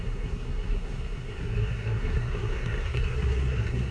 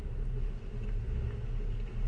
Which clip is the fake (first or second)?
first